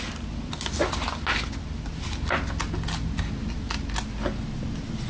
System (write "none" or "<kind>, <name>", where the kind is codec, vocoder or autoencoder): none